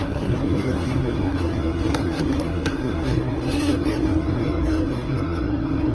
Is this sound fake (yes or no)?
yes